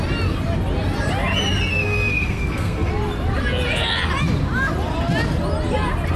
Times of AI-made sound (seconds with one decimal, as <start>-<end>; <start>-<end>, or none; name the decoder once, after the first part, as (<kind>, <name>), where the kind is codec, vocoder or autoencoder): 1.7-2.9 (codec, SNAC)